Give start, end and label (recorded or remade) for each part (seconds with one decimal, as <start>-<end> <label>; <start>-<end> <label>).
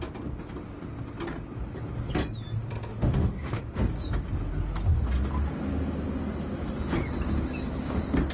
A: 0.0-2.9 recorded; 2.9-3.6 remade; 3.6-8.3 recorded